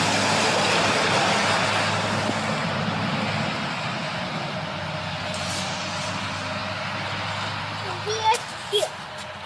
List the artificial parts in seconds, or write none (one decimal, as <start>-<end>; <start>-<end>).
2.6-3.1